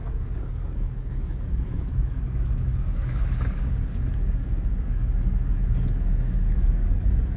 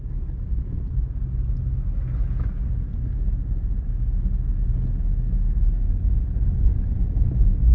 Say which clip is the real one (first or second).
second